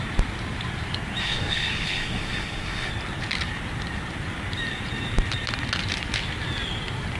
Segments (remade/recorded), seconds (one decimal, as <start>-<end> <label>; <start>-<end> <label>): 0.0-1.2 recorded; 1.2-2.9 remade; 2.9-7.2 recorded